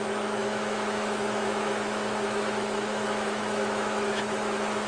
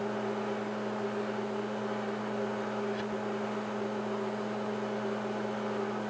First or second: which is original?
second